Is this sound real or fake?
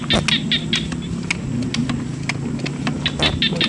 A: real